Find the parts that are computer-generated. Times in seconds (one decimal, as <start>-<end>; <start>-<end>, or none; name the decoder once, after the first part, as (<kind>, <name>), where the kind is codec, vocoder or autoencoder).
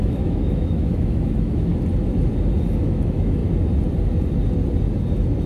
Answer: 0.0-1.7 (autoencoder, DAC-VAE); 2.8-3.4